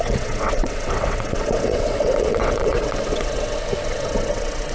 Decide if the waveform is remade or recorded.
remade